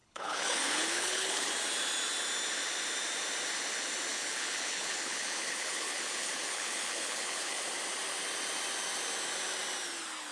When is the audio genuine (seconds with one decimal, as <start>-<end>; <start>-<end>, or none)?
1.5-4.1; 7.6-10.3